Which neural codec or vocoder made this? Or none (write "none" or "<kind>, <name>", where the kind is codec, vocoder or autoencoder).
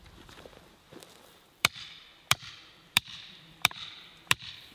vocoder, BigVGAN v2